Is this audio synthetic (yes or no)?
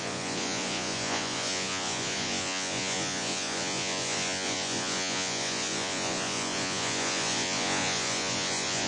yes